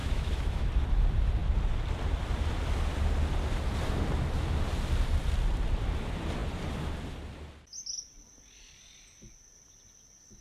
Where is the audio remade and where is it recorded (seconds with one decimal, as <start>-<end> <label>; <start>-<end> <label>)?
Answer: 0.0-0.6 remade; 0.6-10.4 recorded